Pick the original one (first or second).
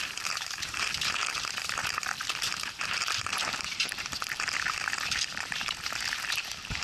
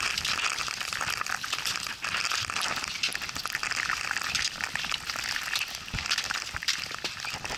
second